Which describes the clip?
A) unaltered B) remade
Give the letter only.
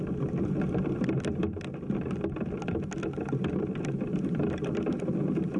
A